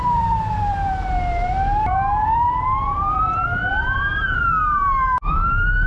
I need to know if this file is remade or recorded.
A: remade